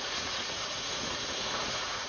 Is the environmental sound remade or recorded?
remade